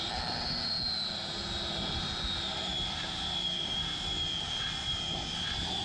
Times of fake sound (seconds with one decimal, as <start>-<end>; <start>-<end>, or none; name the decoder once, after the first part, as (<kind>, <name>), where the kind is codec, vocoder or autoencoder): 2.7-5.8 (vocoder, BigVGAN v2)